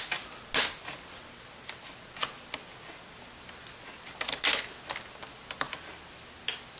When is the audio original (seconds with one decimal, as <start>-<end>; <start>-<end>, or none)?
0.0-6.8